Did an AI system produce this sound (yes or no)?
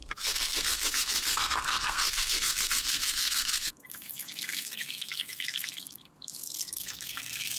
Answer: yes